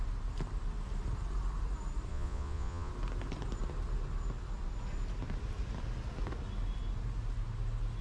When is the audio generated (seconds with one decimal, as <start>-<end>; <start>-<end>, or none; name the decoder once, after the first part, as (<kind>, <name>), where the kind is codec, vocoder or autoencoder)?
2.1-2.9 (vocoder, Vocos)